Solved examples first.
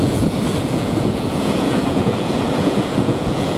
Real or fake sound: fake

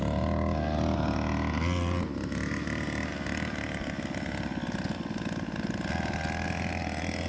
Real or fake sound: real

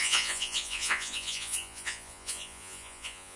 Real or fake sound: fake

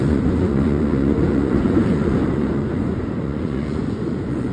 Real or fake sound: fake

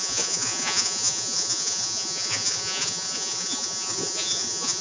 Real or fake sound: fake